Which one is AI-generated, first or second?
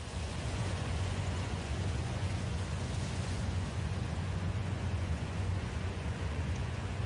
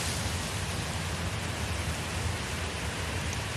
first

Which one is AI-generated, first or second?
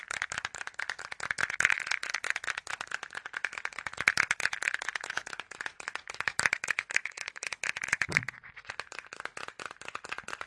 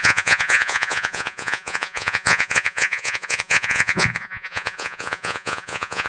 second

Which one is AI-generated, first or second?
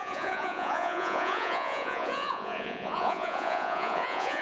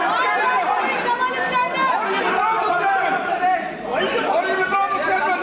first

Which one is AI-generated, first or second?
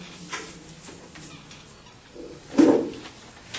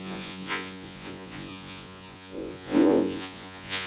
second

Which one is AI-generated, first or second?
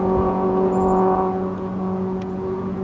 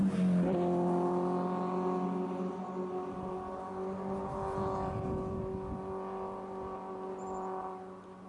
first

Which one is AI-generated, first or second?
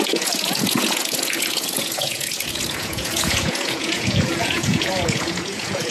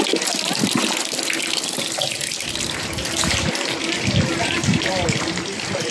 first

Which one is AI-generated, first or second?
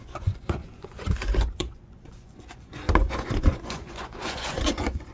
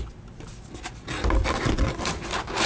first